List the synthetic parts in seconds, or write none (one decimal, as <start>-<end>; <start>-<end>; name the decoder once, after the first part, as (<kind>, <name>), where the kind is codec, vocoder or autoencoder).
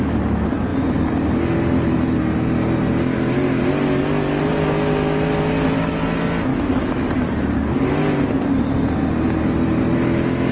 6.5-7.0 (autoencoder, DAC-VAE)